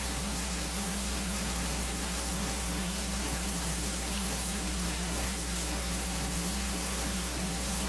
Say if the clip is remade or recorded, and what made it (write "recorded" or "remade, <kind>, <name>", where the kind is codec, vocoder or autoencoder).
remade, codec, SNAC